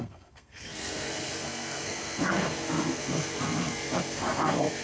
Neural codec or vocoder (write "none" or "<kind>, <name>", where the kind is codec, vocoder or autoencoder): codec, SNAC